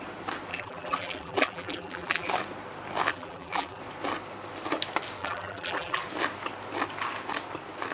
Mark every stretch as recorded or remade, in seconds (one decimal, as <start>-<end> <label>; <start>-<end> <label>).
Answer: 0.0-0.5 recorded; 0.5-2.3 remade; 2.3-3.1 recorded; 3.1-3.8 remade; 3.8-5.2 recorded; 5.2-6.0 remade; 6.0-7.9 recorded